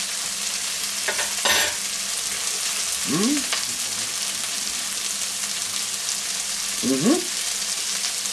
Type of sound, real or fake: real